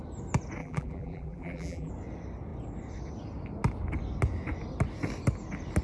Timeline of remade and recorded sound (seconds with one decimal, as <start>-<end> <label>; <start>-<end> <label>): 0.0-0.6 recorded; 0.6-1.9 remade; 1.9-5.8 recorded